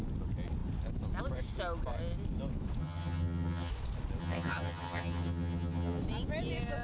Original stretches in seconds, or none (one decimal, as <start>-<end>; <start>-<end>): 0.0-2.8; 3.7-4.2; 6.0-6.8